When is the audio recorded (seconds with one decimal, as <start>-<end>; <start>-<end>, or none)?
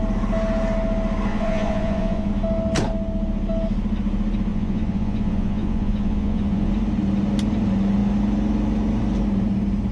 0.0-1.3; 2.3-4.5; 6.7-9.9